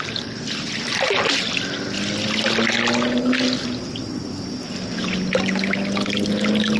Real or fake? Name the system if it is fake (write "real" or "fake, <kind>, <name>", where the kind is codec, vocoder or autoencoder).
real